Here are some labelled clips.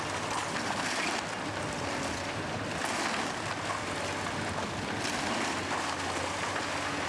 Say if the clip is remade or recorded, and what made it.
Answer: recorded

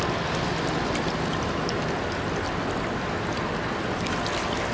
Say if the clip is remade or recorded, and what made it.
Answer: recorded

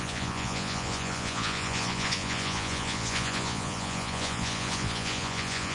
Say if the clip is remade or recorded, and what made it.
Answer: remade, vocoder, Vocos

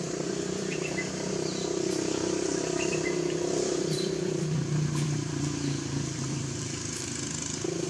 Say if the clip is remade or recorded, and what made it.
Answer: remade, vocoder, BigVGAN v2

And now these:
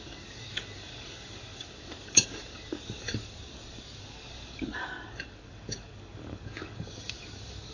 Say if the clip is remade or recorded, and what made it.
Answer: remade, codec, DAC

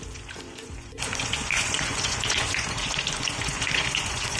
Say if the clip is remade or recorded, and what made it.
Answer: remade, vocoder, Vocos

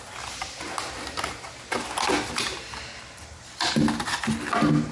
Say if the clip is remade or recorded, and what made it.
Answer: recorded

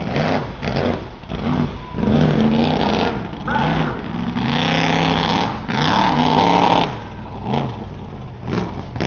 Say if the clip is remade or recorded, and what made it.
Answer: recorded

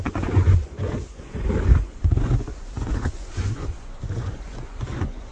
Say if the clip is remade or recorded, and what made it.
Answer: remade, vocoder, Vocos